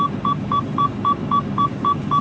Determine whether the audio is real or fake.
real